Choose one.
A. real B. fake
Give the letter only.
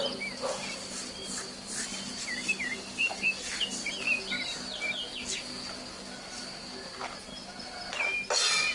A